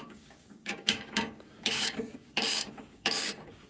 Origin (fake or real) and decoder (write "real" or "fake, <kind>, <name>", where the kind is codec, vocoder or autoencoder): fake, codec, DAC